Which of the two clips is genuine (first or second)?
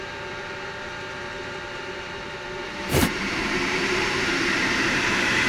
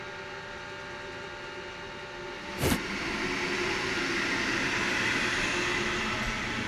second